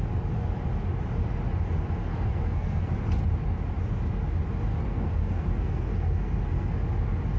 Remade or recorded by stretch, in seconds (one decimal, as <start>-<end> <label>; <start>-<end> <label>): 0.0-2.1 recorded; 2.1-2.9 remade; 2.9-4.7 recorded; 4.7-6.7 remade; 6.7-7.4 recorded